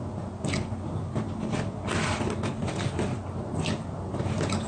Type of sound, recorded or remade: recorded